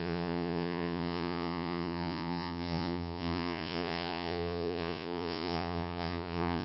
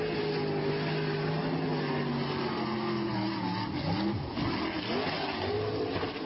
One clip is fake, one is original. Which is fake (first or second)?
first